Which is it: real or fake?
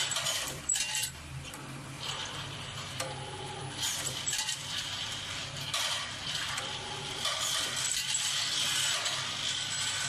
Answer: fake